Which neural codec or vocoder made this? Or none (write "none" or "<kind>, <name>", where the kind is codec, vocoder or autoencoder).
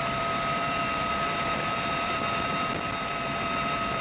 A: vocoder, BigVGAN v2